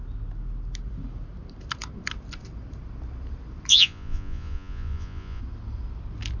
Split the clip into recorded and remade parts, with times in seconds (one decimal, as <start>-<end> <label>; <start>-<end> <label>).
0.0-3.7 recorded; 3.7-5.4 remade; 5.4-6.4 recorded